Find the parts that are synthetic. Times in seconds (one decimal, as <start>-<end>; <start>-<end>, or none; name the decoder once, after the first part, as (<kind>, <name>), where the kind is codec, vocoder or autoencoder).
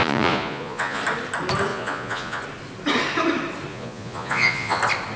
0.0-1.0 (vocoder, Vocos); 1.7-2.4; 3.7-4.8